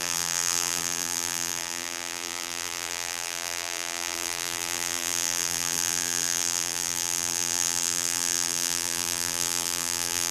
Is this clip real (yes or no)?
no